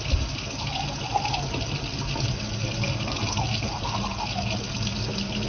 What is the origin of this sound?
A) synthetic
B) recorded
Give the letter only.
B